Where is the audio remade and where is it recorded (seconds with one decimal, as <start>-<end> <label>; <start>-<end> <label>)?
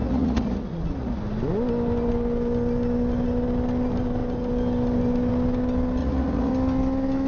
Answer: 0.0-1.2 remade; 1.2-6.0 recorded; 6.0-6.5 remade; 6.5-7.3 recorded